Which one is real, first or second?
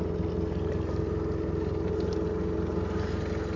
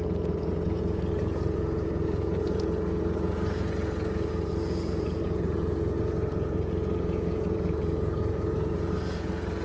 first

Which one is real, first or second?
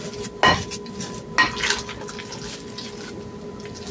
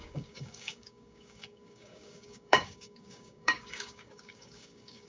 first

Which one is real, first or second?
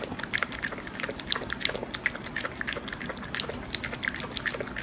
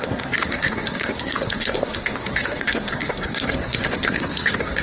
first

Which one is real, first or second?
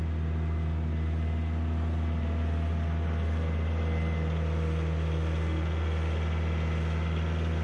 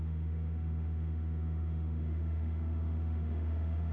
first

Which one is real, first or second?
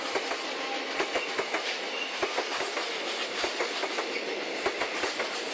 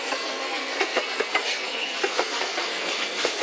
first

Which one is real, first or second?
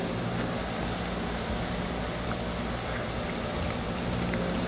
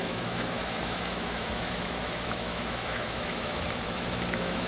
first